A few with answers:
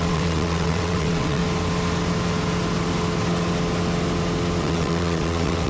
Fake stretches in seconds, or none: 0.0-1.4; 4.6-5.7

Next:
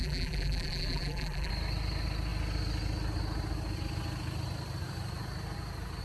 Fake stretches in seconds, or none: 0.0-1.5

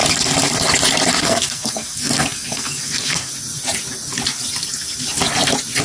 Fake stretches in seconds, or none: 1.2-3.3

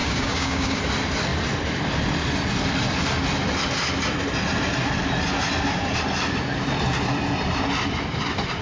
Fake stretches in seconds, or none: 0.0-0.8

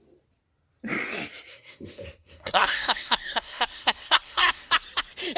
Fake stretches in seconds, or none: 1.5-4.7

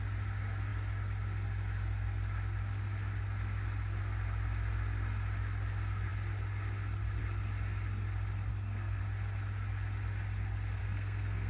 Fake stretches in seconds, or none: 8.5-9.0; 10.8-11.5